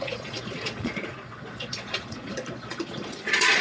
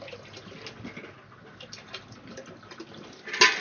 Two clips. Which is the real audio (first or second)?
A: second